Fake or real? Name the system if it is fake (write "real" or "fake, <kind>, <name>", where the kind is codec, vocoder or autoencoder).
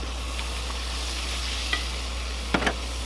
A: real